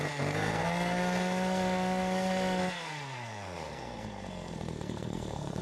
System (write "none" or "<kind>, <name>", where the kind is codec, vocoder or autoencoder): codec, SNAC